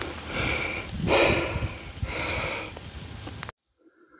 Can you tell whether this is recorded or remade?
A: recorded